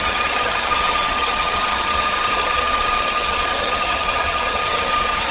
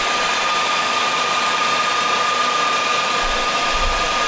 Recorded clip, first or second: second